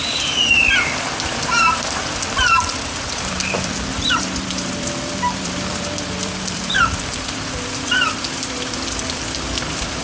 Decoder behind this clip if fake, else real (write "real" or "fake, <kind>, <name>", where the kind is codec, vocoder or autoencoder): fake, vocoder, BigVGAN v2